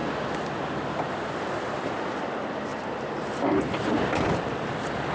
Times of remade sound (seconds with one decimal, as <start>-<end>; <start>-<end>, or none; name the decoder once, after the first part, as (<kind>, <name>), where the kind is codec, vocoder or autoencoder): none